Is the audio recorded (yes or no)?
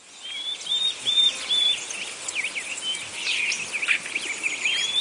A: yes